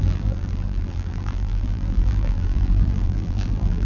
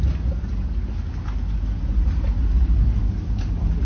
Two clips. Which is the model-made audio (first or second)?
first